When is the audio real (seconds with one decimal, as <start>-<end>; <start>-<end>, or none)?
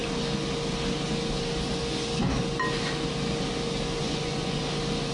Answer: 0.0-4.0; 4.6-5.1